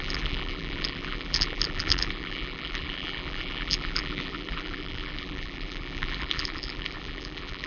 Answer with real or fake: fake